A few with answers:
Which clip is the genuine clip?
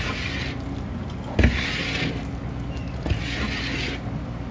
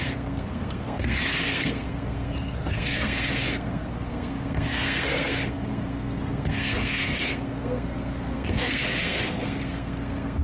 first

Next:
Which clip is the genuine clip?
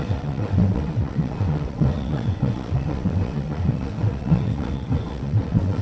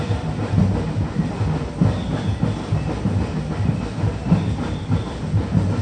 second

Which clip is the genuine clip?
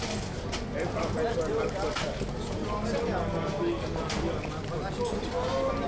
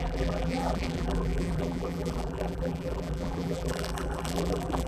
first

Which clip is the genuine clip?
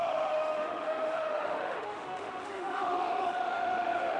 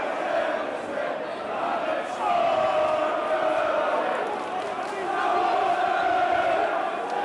second